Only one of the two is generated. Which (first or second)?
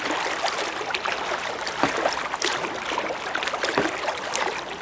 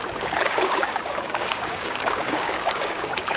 second